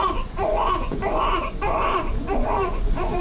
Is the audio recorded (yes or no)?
no